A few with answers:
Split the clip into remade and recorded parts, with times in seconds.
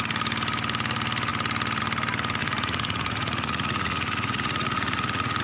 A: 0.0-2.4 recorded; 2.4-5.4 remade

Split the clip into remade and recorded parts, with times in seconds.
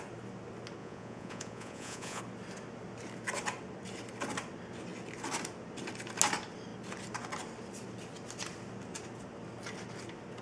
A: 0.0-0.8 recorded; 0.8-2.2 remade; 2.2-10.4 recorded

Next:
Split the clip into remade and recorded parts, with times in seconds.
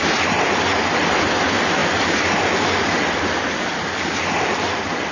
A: 0.0-5.1 recorded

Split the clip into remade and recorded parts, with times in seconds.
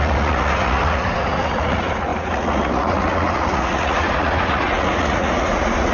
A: 0.0-5.9 remade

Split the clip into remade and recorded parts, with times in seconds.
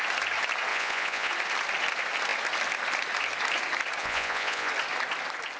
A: 0.0-0.7 recorded; 0.7-1.3 remade; 1.3-4.0 recorded; 4.0-4.7 remade; 4.7-5.6 recorded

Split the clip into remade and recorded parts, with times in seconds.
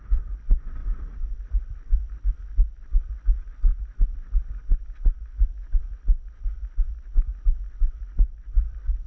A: 0.0-9.1 recorded